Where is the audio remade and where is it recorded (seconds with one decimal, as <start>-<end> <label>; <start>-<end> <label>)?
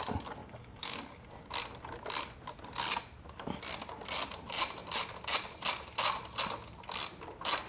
0.0-0.4 recorded; 0.4-1.2 remade; 1.2-7.7 recorded